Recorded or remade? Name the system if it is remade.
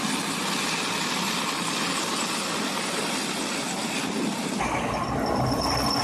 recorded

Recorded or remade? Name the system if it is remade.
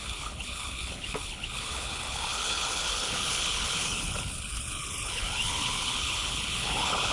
remade, codec, HILCodec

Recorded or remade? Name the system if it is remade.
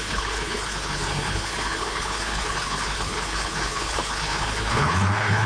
remade, codec, HILCodec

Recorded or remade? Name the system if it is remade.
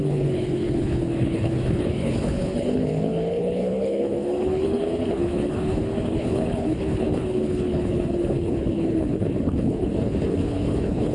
remade, codec, HILCodec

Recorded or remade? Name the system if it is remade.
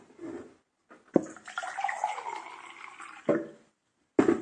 recorded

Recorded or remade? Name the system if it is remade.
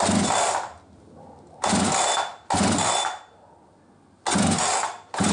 recorded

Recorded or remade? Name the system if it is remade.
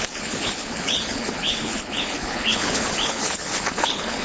remade, codec, HILCodec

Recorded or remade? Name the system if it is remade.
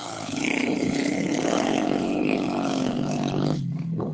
remade, codec, HILCodec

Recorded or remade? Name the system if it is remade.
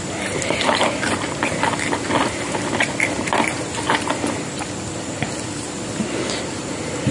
recorded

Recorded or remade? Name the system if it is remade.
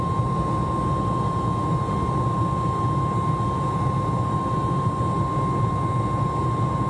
recorded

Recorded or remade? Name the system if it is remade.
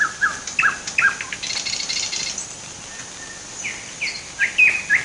recorded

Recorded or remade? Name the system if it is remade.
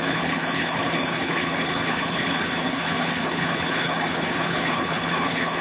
remade, codec, HILCodec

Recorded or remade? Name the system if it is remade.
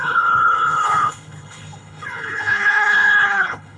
remade, codec, HILCodec